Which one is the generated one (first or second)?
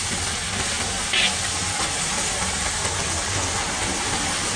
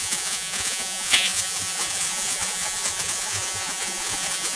second